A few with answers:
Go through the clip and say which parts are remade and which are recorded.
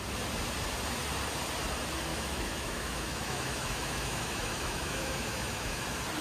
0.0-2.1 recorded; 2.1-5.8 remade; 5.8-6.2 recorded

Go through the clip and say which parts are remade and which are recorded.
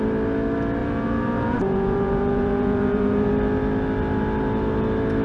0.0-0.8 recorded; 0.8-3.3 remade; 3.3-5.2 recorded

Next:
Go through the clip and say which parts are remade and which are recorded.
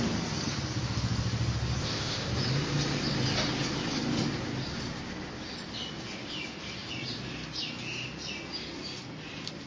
0.0-1.8 recorded; 1.8-2.3 remade; 2.3-9.7 recorded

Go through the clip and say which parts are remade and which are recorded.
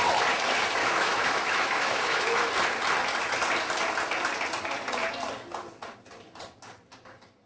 0.0-0.8 recorded; 0.8-2.5 remade; 2.5-7.5 recorded